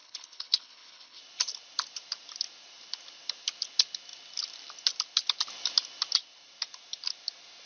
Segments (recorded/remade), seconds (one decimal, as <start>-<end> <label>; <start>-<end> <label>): 0.0-1.2 remade; 1.2-7.7 recorded